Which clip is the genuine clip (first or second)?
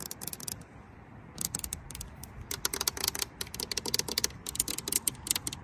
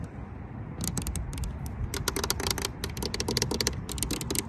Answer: second